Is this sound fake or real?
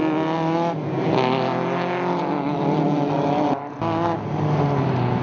real